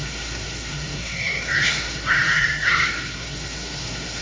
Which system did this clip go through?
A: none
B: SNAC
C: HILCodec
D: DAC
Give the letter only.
B